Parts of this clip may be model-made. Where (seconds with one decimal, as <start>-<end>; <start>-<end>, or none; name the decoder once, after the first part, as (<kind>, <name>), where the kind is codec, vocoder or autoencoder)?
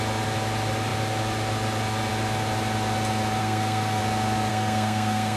3.4-4.0 (codec, SNAC); 4.5-5.4